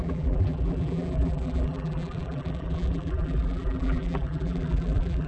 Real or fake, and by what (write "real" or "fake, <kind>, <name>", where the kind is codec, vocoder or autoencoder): fake, vocoder, BigVGAN v2